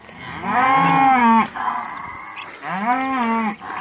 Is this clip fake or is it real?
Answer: real